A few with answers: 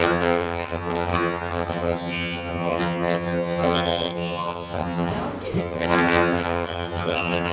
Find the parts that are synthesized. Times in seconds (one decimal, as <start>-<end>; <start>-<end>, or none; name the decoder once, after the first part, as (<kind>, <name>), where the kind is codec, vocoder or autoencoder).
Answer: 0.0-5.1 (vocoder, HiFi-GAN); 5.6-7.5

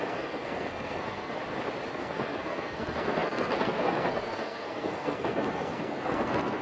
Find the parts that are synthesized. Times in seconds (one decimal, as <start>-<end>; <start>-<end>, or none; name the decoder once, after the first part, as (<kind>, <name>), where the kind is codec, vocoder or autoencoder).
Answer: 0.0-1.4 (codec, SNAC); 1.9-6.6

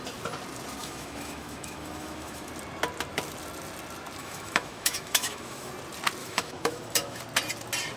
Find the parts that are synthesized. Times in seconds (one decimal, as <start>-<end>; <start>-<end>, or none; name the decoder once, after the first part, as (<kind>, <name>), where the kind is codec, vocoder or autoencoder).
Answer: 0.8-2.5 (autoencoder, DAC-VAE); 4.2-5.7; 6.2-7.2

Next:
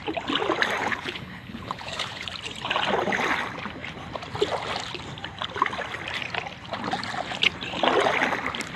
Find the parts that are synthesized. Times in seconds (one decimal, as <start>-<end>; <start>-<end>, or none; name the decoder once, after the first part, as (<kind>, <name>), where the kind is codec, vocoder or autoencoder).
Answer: 0.8-2.3 (codec, HILCodec)